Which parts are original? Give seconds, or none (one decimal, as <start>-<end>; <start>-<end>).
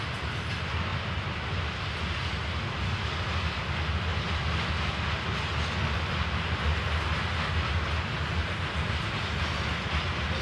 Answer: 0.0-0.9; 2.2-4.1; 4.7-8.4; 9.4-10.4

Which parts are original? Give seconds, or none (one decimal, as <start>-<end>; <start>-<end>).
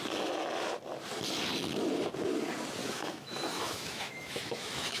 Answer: 0.0-2.8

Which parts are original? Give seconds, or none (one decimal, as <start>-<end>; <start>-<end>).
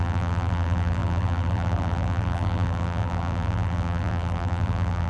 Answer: none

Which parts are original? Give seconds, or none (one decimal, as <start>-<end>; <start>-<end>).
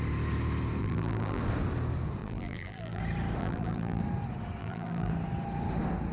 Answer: 0.0-0.8; 1.4-2.2; 3.0-3.4; 4.0-4.6; 5.1-6.1